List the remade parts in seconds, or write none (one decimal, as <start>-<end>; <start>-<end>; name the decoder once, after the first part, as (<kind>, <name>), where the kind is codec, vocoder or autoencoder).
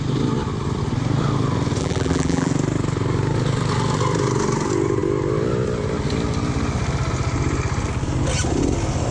1.8-2.5 (vocoder, BigVGAN v2)